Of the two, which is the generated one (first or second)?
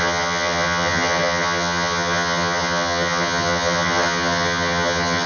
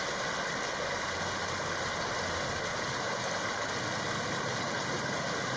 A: first